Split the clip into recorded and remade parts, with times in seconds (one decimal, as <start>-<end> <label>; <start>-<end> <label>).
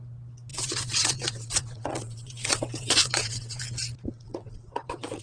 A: 0.0-0.5 recorded; 0.5-3.6 remade; 3.6-4.1 recorded; 4.1-5.2 remade